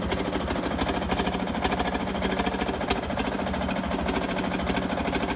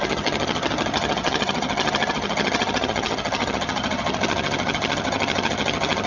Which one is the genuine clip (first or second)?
first